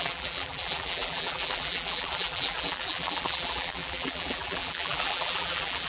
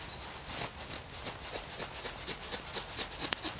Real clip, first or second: second